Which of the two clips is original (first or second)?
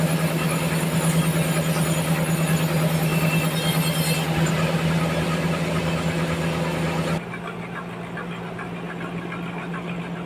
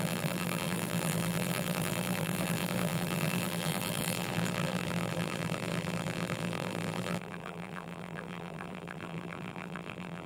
first